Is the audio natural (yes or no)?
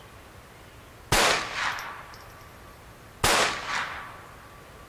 yes